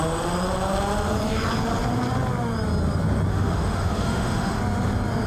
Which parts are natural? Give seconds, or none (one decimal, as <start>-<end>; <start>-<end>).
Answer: 0.0-3.3; 4.6-5.3